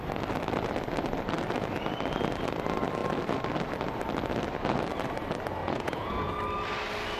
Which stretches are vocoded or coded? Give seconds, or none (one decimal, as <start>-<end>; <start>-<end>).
5.6-6.3